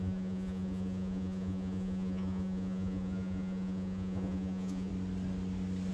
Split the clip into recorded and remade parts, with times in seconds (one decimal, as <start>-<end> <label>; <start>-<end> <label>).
0.0-4.9 remade; 4.9-5.9 recorded